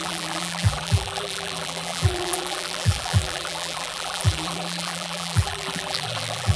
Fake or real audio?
fake